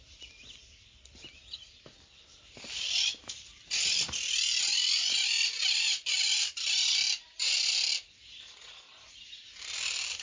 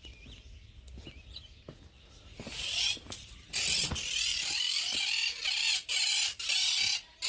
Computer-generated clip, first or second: first